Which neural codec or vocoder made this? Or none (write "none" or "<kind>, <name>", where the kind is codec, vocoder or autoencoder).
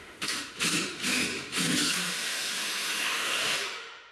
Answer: autoencoder, DAC-VAE